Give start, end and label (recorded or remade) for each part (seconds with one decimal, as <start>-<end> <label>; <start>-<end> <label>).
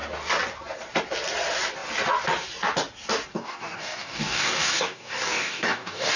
0.0-3.3 recorded; 3.3-6.2 remade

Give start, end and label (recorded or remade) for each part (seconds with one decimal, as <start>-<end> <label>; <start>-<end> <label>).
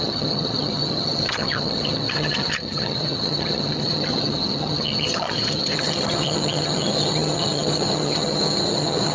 0.0-9.1 remade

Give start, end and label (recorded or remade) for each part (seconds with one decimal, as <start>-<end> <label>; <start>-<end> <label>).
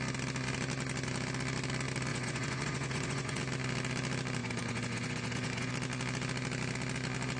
0.0-2.1 recorded; 2.1-3.4 remade; 3.4-4.4 recorded; 4.4-5.7 remade; 5.7-7.4 recorded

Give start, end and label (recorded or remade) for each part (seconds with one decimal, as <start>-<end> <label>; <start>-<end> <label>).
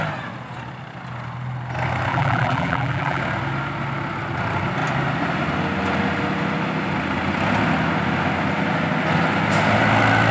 0.0-2.1 recorded; 2.1-3.2 remade; 3.2-10.3 recorded